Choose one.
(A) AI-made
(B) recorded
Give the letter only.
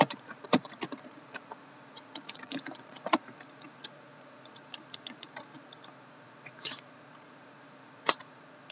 A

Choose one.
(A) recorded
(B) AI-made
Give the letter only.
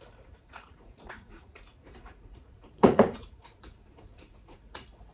B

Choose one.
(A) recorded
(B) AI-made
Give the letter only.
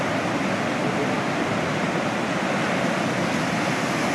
A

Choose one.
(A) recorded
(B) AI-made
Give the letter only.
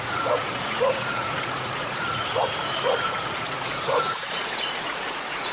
B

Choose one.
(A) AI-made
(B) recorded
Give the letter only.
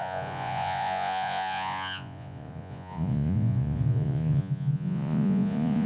A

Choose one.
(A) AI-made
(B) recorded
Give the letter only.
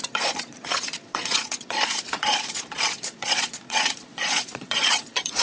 A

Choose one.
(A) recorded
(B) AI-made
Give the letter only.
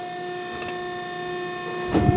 A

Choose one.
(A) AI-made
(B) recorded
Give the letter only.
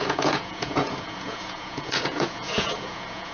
A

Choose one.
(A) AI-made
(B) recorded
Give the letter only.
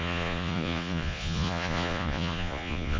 A